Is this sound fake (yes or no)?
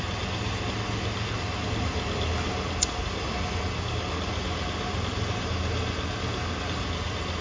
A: no